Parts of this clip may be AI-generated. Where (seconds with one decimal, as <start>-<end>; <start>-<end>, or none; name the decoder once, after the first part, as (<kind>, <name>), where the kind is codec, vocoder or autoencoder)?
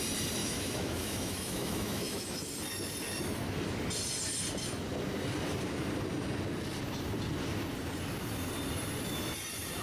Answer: 0.4-2.5 (autoencoder, DAC-VAE)